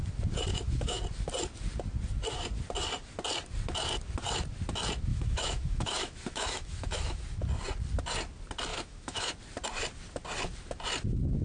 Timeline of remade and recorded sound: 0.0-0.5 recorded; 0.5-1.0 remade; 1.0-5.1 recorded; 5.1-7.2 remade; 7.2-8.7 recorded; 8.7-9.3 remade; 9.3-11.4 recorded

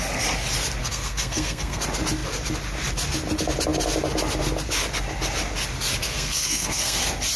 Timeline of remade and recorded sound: 0.0-0.8 recorded; 0.8-1.8 remade; 1.8-6.0 recorded; 6.0-7.0 remade; 7.0-7.4 recorded